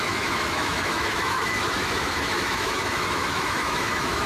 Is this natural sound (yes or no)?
no